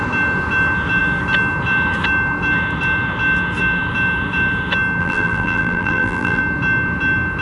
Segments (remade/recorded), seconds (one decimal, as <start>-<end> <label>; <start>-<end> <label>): 0.0-5.0 recorded; 5.0-6.4 remade; 6.4-7.4 recorded

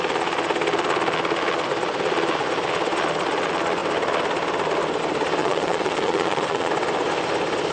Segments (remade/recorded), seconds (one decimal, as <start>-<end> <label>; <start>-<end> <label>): 0.0-5.4 recorded; 5.4-6.7 remade; 6.7-7.7 recorded

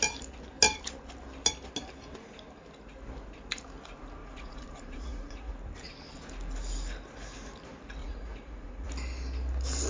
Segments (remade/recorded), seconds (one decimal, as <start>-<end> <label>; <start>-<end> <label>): 0.0-4.2 recorded; 4.2-5.5 remade; 5.5-8.0 recorded; 8.0-8.9 remade; 8.9-9.9 recorded

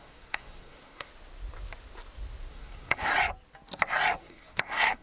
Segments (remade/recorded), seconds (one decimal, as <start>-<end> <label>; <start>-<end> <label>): 0.0-1.1 remade; 1.1-2.5 recorded; 2.5-3.1 remade; 3.1-4.2 recorded; 4.2-5.0 remade

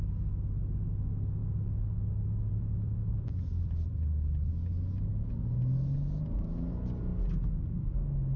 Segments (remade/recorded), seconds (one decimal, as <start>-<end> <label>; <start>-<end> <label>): 0.0-2.5 recorded; 2.5-4.5 remade; 4.5-8.4 recorded

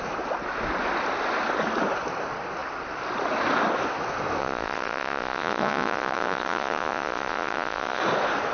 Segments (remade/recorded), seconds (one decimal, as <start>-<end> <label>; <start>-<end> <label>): 0.0-4.4 recorded; 4.4-8.0 remade; 8.0-8.5 recorded